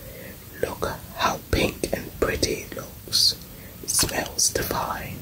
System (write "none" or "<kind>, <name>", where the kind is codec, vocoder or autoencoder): vocoder, BigVGAN v2